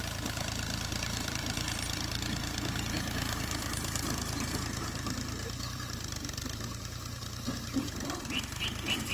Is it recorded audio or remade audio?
remade